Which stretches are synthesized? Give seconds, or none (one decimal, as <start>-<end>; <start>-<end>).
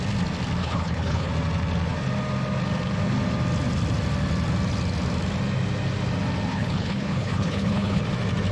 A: 0.6-1.3; 6.5-8.0